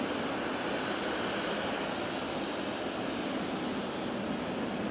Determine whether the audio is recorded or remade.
recorded